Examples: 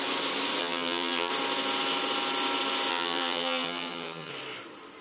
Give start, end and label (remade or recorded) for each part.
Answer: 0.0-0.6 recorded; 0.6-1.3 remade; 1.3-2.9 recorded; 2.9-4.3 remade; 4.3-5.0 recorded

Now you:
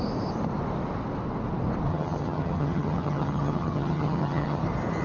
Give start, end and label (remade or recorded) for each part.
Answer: 0.0-1.9 recorded; 1.9-4.6 remade; 4.6-5.0 recorded